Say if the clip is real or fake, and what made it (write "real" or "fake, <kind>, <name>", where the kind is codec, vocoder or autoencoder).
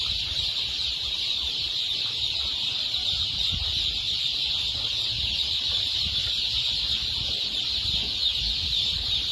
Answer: real